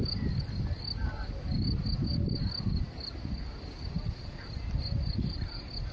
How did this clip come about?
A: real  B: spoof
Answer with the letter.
A